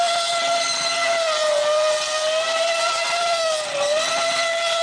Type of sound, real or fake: real